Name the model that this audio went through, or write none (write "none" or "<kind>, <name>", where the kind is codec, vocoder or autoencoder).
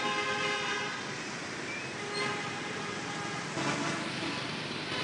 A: none